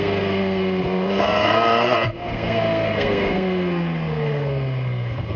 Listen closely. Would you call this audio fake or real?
fake